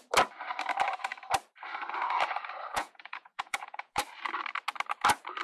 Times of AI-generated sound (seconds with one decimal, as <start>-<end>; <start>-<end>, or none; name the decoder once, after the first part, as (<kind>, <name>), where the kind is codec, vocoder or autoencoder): 2.7-4.0 (vocoder, Vocos)